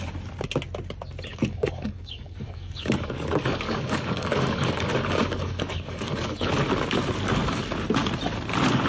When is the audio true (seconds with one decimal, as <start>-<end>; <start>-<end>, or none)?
0.0-1.3; 6.5-8.9